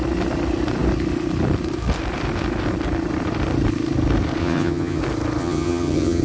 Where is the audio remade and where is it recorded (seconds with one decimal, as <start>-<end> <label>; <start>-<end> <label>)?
0.0-4.4 recorded; 4.4-5.0 remade; 5.0-5.4 recorded; 5.4-6.2 remade